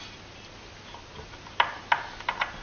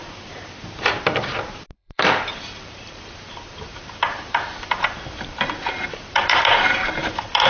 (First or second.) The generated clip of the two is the second